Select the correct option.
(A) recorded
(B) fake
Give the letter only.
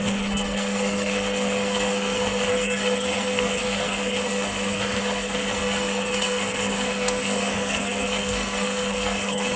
B